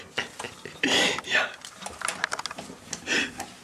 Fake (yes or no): no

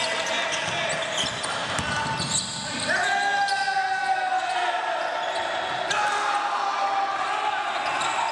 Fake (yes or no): no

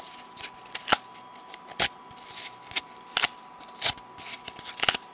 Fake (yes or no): no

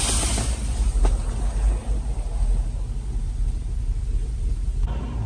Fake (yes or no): no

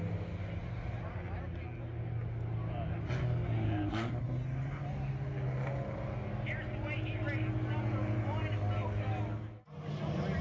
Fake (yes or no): no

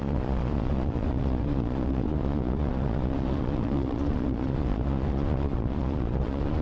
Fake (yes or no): yes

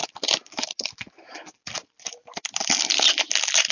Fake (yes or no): no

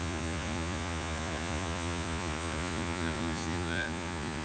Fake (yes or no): yes